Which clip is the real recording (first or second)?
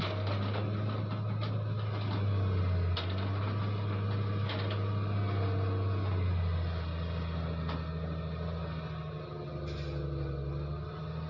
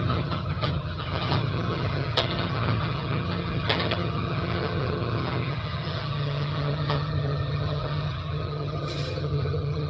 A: first